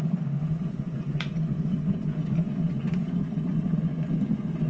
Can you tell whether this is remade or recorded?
remade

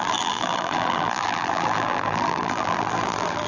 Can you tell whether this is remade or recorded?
remade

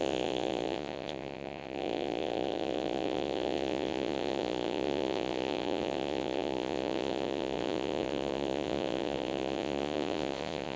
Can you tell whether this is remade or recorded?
remade